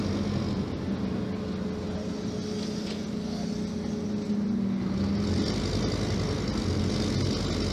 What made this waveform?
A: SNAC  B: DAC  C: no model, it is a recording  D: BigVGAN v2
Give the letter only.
C